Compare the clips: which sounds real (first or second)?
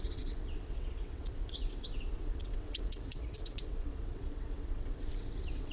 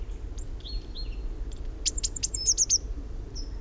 second